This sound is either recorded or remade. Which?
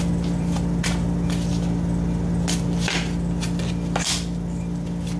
recorded